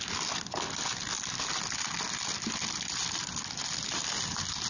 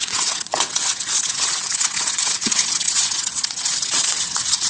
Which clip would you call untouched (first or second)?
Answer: first